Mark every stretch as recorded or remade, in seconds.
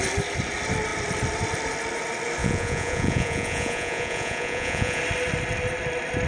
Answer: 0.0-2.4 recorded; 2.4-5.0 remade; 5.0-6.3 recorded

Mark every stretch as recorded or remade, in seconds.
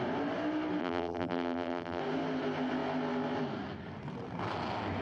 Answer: 0.0-0.8 recorded; 0.8-2.0 remade; 2.0-5.0 recorded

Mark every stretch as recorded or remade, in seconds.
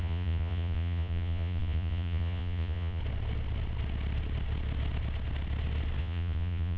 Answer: 0.0-3.0 remade; 3.0-6.0 recorded; 6.0-6.8 remade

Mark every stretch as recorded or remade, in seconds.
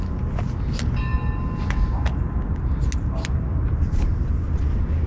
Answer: 0.0-5.1 recorded